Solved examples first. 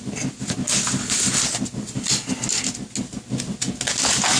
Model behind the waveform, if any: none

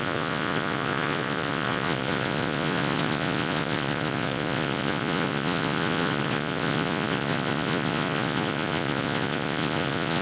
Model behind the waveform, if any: vocoder, Vocos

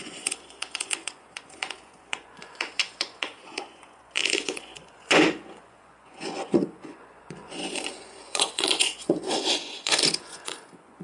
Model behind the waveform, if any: vocoder, Vocos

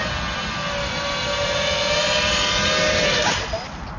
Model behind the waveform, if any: none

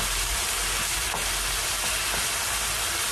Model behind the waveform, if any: none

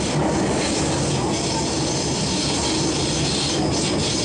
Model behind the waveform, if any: none